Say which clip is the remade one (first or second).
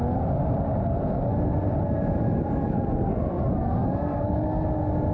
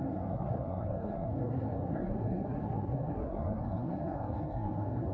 second